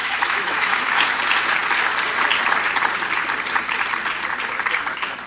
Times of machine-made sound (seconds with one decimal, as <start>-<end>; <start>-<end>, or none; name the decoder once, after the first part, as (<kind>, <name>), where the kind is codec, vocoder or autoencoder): 0.0-1.2 (autoencoder, DAC-VAE)